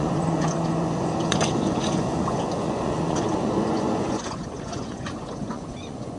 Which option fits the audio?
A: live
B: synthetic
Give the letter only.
B